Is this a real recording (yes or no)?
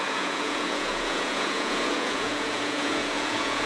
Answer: no